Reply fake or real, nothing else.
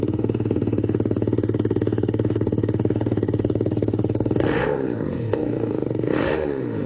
fake